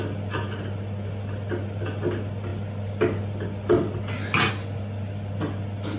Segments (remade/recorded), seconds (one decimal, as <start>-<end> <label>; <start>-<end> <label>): 0.0-6.0 recorded